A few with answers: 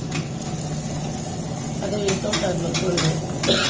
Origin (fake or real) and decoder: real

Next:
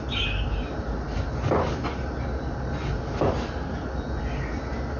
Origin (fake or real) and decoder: real